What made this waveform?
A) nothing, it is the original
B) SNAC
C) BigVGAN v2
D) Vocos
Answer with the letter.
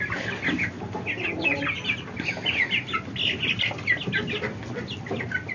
A